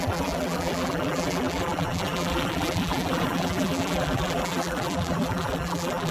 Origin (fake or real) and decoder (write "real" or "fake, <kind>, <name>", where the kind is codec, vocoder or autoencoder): fake, vocoder, BigVGAN v2